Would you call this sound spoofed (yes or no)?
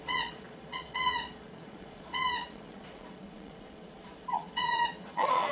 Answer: yes